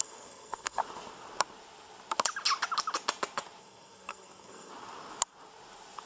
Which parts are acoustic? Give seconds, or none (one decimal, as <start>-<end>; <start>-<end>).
0.8-3.6; 4.7-6.1